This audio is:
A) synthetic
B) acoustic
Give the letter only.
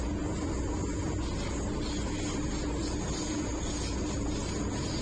B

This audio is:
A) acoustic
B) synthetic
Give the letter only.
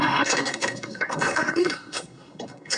B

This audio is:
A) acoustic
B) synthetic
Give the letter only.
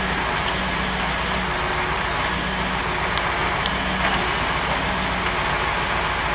A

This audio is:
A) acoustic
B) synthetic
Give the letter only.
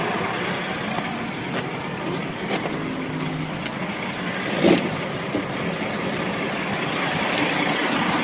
A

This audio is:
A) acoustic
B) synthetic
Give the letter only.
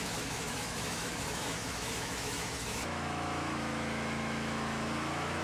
B